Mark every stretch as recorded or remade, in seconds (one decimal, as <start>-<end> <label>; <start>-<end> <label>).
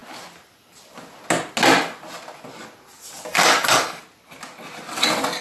0.0-3.3 recorded; 3.3-4.0 remade; 4.0-5.4 recorded